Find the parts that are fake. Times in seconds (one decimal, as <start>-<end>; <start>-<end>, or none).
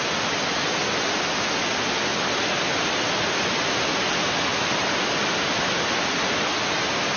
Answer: 4.5-5.7